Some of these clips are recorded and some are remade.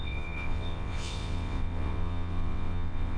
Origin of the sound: remade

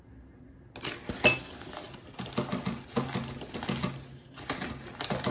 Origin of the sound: recorded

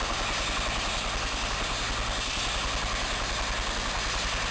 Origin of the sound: recorded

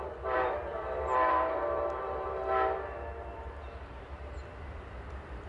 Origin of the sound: remade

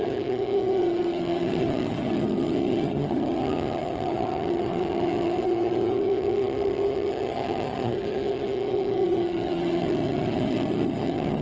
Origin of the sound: remade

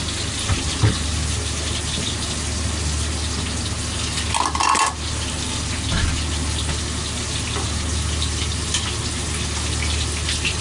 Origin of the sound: recorded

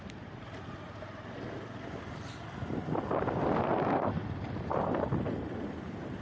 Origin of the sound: recorded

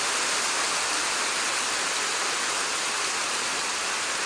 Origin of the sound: recorded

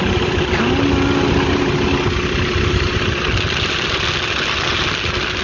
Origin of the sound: recorded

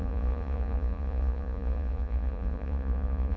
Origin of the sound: remade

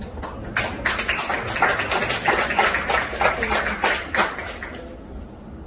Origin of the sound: recorded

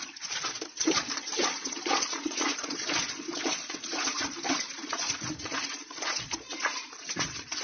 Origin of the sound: remade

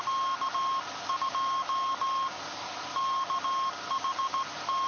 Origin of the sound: recorded